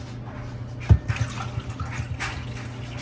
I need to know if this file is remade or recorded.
recorded